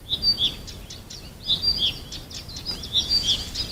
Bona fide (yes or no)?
yes